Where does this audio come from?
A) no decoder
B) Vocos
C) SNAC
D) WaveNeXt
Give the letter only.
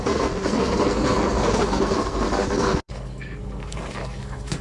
C